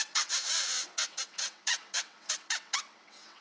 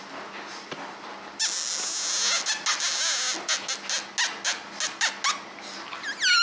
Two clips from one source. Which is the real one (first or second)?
second